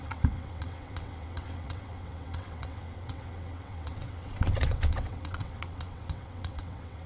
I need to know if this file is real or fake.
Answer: fake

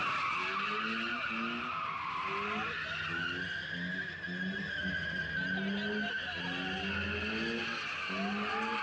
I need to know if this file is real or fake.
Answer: real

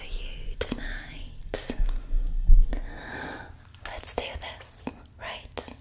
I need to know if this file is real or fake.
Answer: real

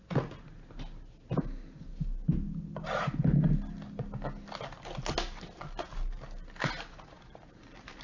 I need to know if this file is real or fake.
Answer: real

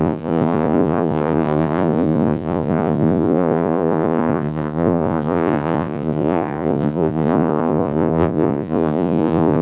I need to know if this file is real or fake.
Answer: fake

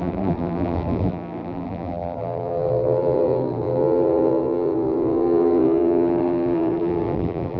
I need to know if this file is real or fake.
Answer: fake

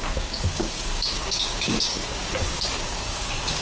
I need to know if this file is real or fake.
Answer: fake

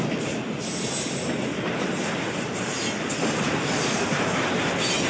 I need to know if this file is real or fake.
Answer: real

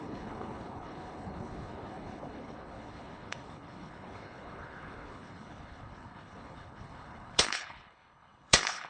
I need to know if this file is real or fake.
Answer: fake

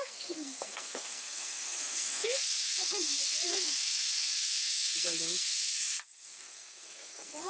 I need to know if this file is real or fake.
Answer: fake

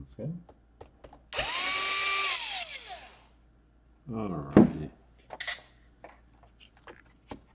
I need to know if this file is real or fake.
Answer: real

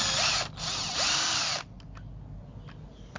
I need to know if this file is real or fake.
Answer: real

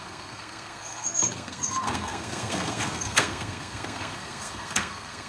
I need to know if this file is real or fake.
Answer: fake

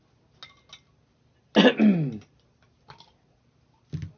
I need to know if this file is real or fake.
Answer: real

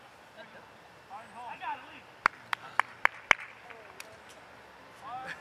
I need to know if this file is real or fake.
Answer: real